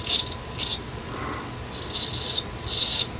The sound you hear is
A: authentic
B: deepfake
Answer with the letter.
A